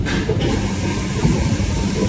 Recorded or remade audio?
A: remade